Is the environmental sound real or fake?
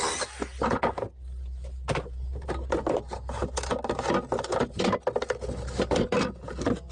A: real